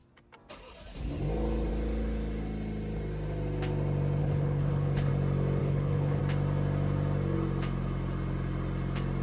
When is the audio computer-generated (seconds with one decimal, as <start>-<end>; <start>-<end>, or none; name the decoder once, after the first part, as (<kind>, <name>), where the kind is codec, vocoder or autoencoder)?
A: 4.2-5.1 (codec, HILCodec); 5.6-6.2